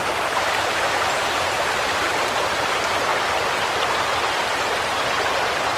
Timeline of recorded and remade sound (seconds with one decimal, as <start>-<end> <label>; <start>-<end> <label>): 0.0-3.1 remade; 3.1-5.8 recorded